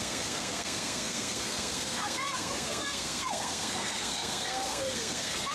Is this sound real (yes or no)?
no